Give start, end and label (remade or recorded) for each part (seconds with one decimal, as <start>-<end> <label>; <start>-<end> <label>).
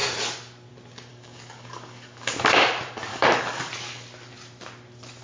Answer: 0.0-1.1 recorded; 1.1-2.3 remade; 2.3-3.1 recorded; 3.1-3.7 remade; 3.7-5.2 recorded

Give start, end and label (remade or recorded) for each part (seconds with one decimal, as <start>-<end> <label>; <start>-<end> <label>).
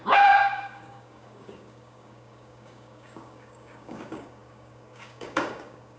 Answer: 0.0-6.0 remade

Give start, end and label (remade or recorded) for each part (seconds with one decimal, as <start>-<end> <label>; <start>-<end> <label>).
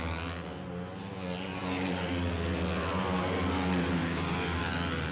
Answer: 0.0-4.0 recorded; 4.0-4.6 remade; 4.6-5.1 recorded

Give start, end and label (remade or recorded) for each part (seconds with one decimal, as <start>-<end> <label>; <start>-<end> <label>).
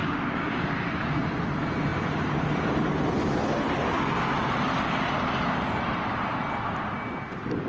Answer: 0.0-0.7 remade; 0.7-7.7 recorded